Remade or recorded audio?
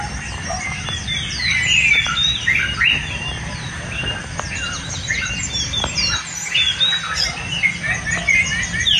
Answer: recorded